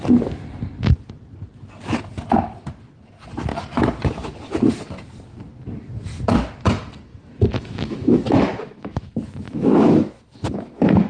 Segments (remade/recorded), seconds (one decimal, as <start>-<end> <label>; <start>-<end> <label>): 0.0-7.1 recorded; 7.1-11.1 remade